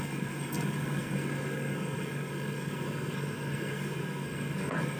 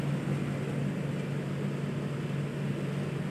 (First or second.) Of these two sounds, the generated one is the first